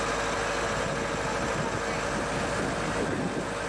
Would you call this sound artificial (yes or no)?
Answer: no